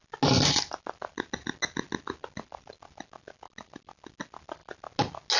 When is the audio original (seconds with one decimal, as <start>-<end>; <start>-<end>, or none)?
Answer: 0.0-5.4